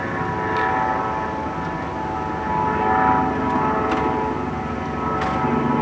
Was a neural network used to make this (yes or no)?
no